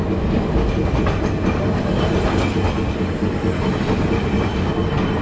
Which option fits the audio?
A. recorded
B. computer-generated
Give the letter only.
A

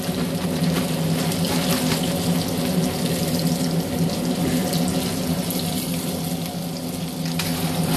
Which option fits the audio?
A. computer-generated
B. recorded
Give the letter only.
B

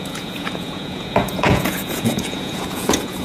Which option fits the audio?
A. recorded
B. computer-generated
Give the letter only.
B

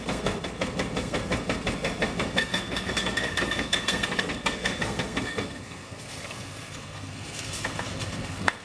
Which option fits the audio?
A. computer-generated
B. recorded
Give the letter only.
A